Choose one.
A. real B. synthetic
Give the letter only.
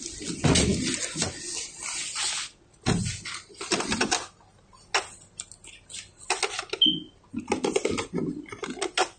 A